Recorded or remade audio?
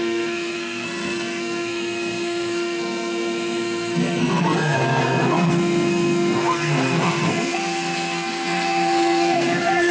remade